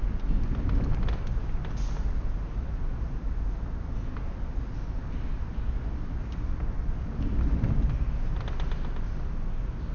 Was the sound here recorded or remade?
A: recorded